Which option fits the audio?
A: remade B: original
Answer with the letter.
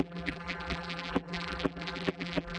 A